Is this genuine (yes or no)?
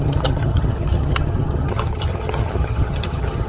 no